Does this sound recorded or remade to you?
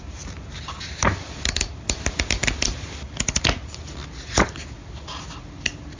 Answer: recorded